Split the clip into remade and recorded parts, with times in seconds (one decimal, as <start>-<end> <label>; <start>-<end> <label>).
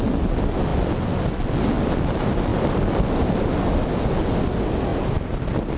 0.0-2.5 recorded; 2.5-3.3 remade; 3.3-4.9 recorded; 4.9-5.8 remade